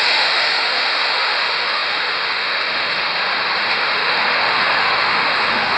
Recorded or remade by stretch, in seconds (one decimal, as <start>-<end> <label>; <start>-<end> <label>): 0.0-3.1 remade; 3.1-3.7 recorded; 3.7-5.8 remade